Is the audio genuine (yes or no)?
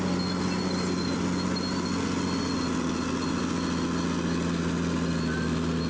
yes